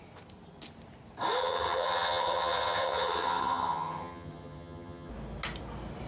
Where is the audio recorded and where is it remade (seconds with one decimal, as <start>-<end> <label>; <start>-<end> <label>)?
0.0-1.4 recorded; 1.4-5.1 remade; 5.1-6.1 recorded